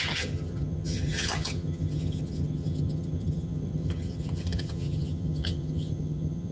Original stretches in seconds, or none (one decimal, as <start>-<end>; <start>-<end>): none